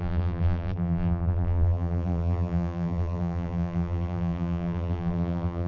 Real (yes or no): no